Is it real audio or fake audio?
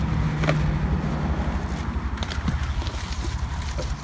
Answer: real